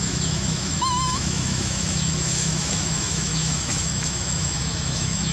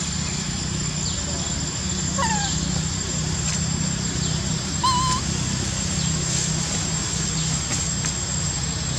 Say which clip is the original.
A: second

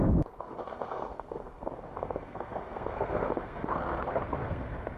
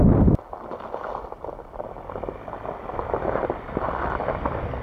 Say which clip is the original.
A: second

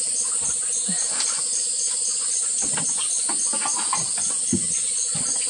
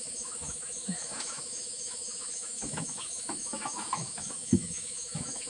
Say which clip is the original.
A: first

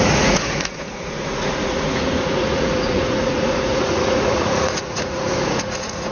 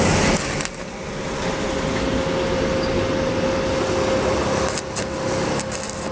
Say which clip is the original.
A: second